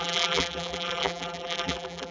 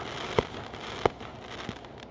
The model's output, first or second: first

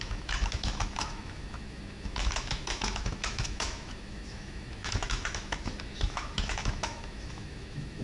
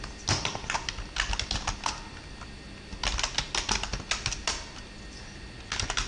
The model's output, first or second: first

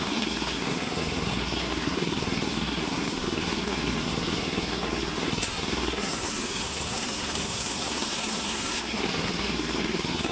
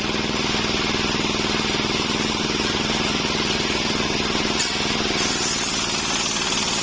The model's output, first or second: first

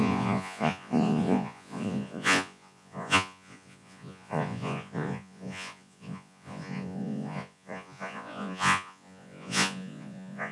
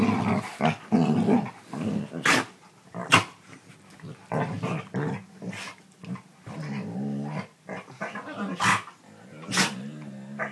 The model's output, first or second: first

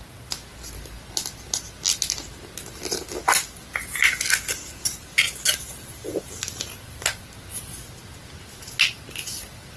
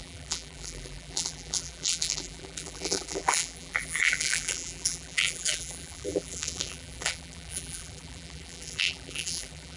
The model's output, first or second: second